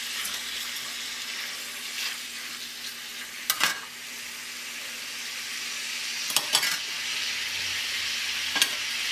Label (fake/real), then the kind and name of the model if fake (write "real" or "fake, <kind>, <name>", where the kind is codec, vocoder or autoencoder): real